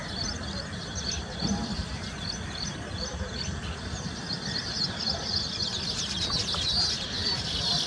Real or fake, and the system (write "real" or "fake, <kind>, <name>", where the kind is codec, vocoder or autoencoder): real